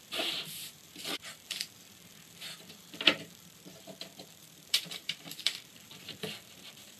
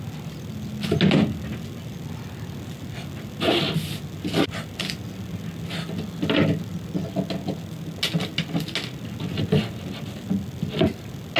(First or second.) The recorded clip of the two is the second